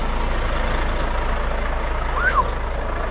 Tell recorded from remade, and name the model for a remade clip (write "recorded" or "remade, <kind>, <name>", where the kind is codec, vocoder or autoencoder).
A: recorded